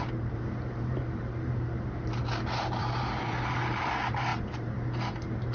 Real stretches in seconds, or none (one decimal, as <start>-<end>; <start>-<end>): none

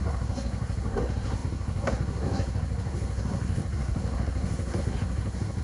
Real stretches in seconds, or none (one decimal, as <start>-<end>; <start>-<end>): none

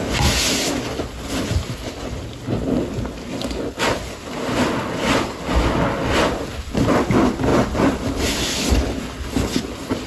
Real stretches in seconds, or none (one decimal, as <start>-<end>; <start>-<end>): 0.0-10.1

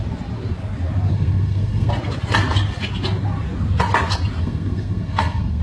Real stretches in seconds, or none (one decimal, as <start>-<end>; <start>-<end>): 0.0-1.1; 1.9-4.4